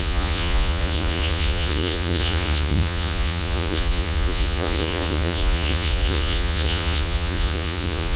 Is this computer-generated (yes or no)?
yes